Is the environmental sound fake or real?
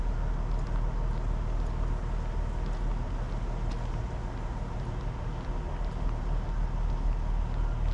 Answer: real